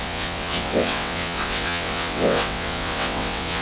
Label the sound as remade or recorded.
remade